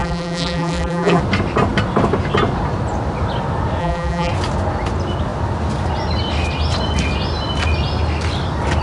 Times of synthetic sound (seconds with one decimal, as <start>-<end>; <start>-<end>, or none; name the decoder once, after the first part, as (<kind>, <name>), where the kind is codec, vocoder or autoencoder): 0.0-1.2 (vocoder, BigVGAN v2); 3.8-4.3